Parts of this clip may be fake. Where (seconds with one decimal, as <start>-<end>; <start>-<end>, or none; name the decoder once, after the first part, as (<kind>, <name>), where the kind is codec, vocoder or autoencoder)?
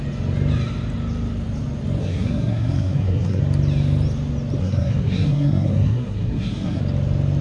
2.0-3.4 (codec, SNAC); 4.6-6.8